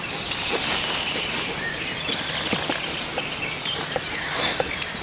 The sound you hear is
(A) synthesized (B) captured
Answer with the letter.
A